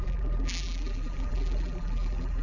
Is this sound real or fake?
fake